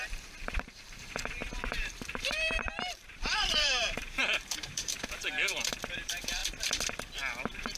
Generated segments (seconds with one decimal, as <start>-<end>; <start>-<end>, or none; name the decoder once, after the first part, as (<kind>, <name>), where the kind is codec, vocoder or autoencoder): 0.0-6.4 (vocoder, BigVGAN v2); 7.3-7.8